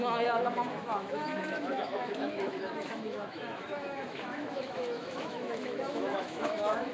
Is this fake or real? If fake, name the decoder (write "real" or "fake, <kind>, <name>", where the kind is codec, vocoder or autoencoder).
fake, autoencoder, DAC-VAE